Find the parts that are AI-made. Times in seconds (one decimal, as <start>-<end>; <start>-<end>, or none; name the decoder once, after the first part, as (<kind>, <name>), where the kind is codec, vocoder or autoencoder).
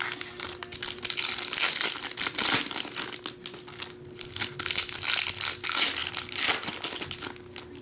none